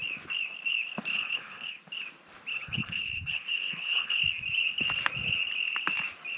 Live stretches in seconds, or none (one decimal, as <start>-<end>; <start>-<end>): 0.0-1.1; 1.8-2.5; 4.2-6.4